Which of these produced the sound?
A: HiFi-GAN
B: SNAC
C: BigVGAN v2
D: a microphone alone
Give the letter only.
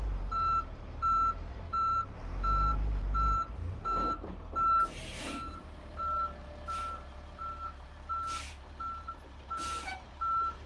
C